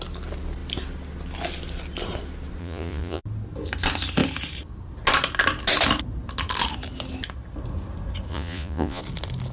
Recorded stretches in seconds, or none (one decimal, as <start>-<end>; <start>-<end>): 0.0-2.6; 3.2-8.3; 9.0-9.5